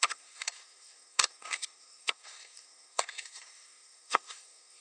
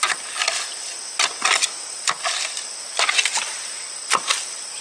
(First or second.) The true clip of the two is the second